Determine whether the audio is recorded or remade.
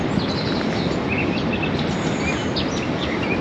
recorded